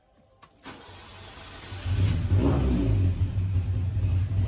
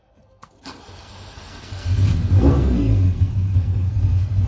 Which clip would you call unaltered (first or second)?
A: first